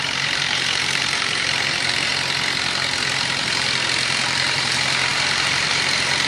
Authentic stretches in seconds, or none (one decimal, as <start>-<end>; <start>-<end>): 2.1-3.4